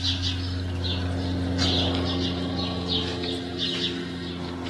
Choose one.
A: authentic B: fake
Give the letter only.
A